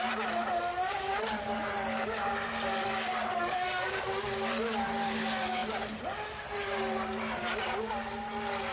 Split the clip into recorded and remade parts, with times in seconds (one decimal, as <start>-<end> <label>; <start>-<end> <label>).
0.0-3.2 recorded; 3.2-4.0 remade; 4.0-8.7 recorded